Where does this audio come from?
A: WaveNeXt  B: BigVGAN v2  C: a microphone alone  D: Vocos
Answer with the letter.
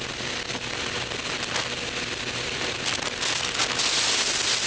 C